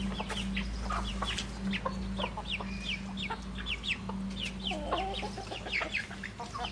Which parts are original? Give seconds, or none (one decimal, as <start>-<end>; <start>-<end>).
0.0-6.7